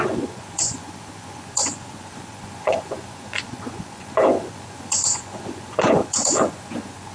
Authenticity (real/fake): fake